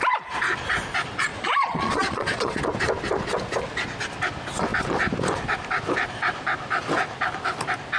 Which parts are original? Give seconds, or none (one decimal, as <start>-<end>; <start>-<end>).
0.0-1.3; 2.6-8.0